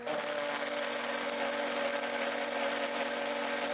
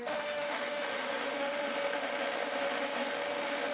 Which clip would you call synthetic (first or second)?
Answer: second